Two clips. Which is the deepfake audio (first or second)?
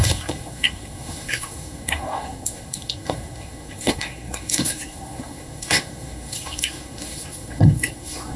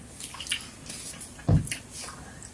first